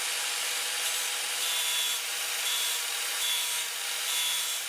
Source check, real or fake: fake